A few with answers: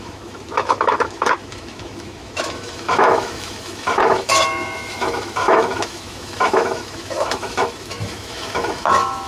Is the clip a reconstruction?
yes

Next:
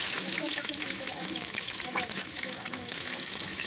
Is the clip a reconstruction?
yes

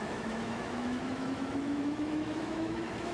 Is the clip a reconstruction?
yes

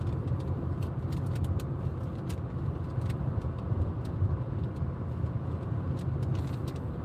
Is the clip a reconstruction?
no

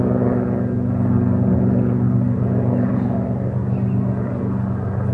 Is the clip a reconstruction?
no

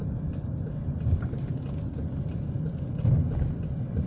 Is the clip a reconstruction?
no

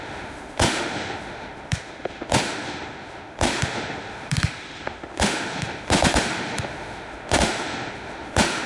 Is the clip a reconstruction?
yes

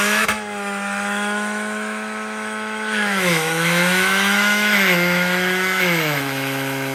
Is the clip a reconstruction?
yes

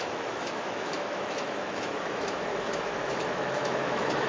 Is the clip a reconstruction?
yes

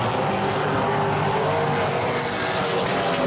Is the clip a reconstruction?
no